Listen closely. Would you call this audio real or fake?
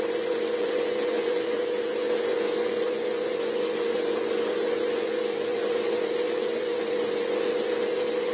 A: fake